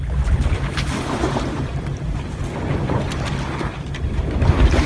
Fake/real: fake